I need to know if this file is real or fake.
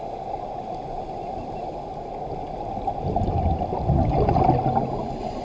real